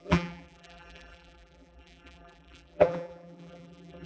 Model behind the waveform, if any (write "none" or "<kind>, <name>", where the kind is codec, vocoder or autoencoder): vocoder, BigVGAN v2